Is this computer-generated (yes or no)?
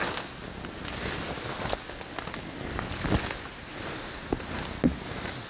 no